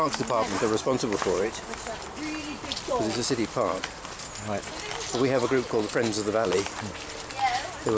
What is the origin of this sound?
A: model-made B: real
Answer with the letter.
B